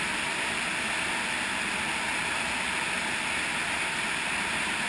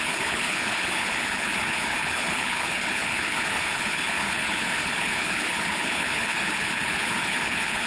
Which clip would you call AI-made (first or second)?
second